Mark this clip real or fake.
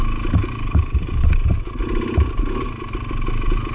real